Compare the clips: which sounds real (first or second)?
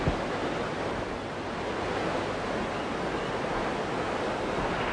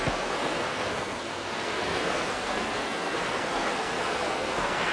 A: first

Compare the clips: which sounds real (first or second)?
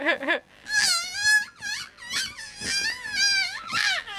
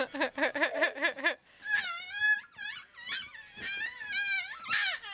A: second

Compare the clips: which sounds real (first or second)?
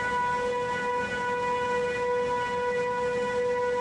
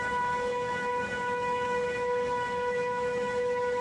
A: first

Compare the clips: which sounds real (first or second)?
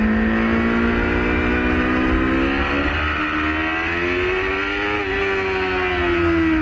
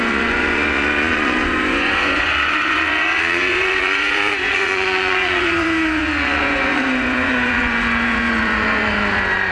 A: first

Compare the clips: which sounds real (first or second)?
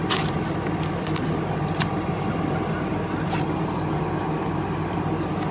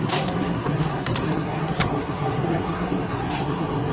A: first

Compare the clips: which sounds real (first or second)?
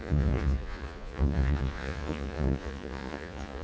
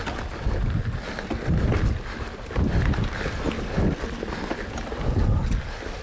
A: second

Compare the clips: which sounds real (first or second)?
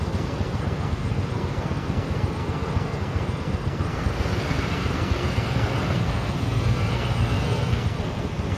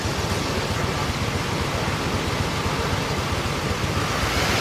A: second